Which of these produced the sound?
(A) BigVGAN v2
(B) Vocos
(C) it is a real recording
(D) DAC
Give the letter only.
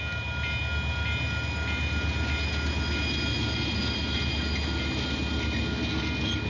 C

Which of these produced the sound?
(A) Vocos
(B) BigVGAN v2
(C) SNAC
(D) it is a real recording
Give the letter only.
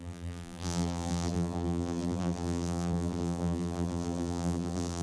B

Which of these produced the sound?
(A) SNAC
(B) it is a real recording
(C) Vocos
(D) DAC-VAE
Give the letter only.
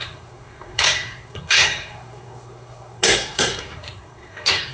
A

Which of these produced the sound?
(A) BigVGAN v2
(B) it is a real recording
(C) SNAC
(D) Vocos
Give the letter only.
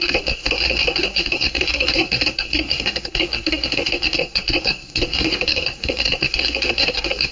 C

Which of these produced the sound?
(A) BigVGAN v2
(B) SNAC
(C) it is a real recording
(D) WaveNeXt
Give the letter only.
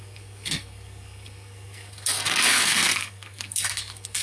B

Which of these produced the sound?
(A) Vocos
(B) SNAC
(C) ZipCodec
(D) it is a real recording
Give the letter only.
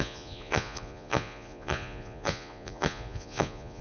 A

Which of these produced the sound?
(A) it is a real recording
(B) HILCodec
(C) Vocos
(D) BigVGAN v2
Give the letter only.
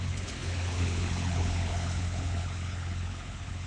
B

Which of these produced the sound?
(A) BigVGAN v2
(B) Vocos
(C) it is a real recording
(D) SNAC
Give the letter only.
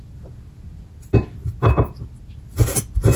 C